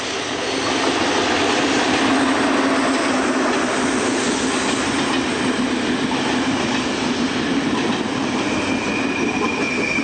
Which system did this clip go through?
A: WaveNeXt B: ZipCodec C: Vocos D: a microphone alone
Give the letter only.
D